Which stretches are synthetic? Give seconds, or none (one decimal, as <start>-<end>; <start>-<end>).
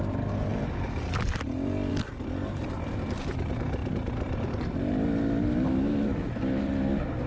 none